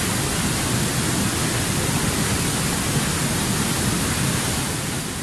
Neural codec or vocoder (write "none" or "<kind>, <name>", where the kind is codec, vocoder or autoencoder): none